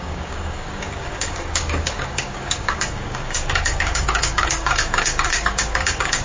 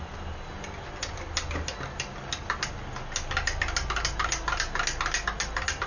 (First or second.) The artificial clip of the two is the first